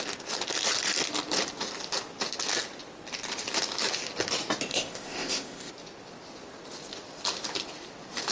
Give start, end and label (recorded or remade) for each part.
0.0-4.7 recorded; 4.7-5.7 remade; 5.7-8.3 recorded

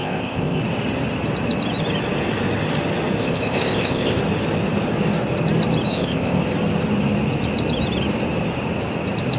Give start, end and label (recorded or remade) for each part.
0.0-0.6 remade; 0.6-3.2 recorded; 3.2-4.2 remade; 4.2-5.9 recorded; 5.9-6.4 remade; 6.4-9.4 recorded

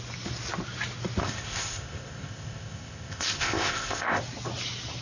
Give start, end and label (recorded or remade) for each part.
0.0-1.2 recorded; 1.2-4.2 remade; 4.2-5.0 recorded

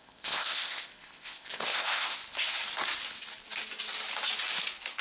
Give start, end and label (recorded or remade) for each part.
0.0-2.2 remade; 2.2-5.0 recorded

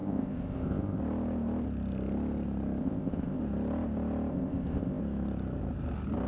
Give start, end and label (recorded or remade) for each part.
0.0-1.0 remade; 1.0-2.8 recorded; 2.8-3.4 remade; 3.4-4.3 recorded; 4.3-5.0 remade; 5.0-6.3 recorded

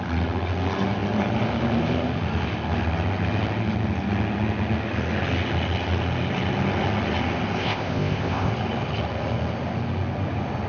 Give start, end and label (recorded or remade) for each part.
0.0-7.6 recorded; 7.6-8.5 remade; 8.5-10.7 recorded

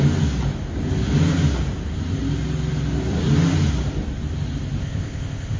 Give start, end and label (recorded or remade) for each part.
0.0-4.8 recorded; 4.8-5.6 remade